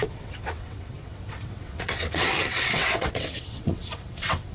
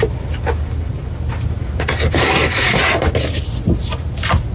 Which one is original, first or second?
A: second